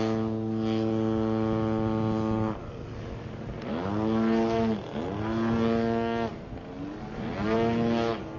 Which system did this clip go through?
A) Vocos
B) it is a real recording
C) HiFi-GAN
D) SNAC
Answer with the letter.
B